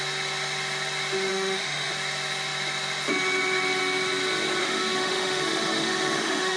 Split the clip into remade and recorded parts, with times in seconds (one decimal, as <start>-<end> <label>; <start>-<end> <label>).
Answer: 0.0-1.3 recorded; 1.3-1.9 remade; 1.9-4.6 recorded; 4.6-6.6 remade

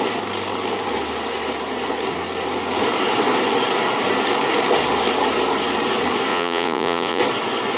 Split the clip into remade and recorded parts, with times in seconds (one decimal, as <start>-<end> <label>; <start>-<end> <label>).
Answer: 0.0-6.3 recorded; 6.3-7.2 remade; 7.2-7.8 recorded

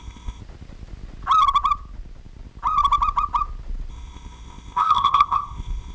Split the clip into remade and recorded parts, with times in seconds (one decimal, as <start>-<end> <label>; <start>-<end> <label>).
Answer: 0.0-0.4 remade; 0.4-3.9 recorded; 3.9-5.9 remade

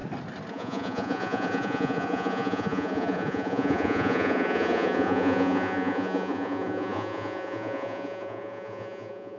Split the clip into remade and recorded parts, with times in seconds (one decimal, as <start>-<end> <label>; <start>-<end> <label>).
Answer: 0.0-0.5 recorded; 0.5-9.4 remade

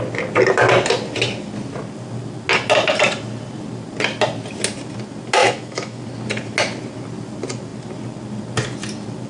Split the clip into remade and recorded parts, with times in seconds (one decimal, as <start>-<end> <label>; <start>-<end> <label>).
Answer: 0.0-5.4 recorded; 5.4-6.0 remade; 6.0-9.3 recorded